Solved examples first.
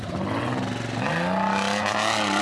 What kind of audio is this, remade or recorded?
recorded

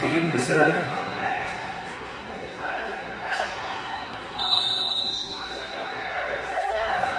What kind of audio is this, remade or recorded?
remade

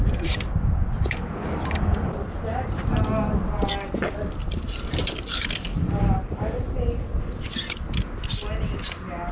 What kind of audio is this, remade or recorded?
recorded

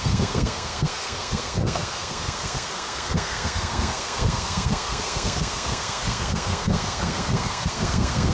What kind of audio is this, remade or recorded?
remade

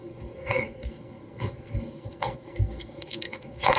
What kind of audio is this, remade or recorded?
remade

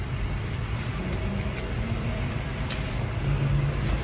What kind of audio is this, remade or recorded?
recorded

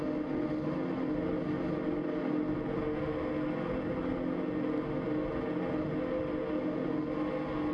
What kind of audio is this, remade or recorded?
recorded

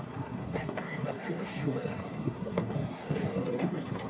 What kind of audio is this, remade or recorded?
remade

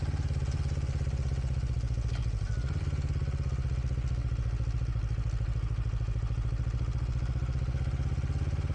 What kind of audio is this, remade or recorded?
recorded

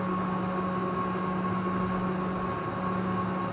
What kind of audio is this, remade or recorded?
recorded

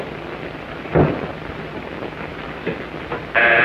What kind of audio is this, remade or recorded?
recorded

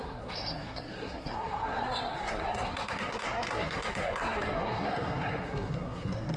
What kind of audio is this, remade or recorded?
remade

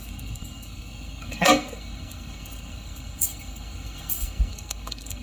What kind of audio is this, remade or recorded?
remade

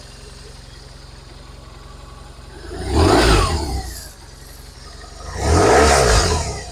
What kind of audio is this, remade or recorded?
recorded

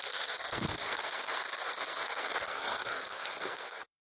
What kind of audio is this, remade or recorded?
remade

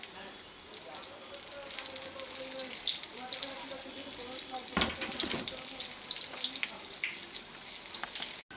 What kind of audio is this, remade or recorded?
recorded